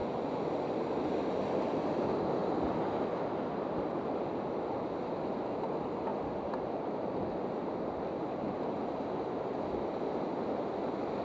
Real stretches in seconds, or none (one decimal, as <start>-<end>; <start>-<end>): 0.5-11.2